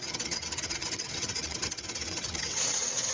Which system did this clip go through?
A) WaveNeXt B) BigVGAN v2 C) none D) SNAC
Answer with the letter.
A